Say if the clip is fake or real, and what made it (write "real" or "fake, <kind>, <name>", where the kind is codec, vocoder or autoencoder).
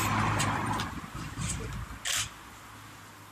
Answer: real